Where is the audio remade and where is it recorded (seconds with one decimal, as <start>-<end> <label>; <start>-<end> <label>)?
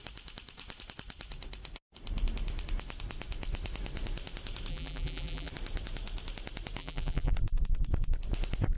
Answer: 0.0-4.7 recorded; 4.7-5.5 remade; 5.5-6.8 recorded; 6.8-7.3 remade; 7.3-8.8 recorded